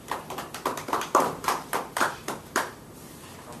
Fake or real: fake